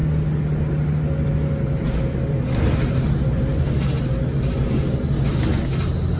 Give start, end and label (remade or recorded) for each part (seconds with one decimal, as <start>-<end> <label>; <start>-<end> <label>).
0.0-6.2 recorded